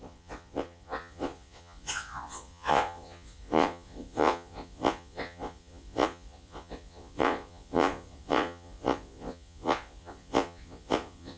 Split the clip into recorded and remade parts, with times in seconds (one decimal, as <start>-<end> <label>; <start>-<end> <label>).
0.0-11.4 remade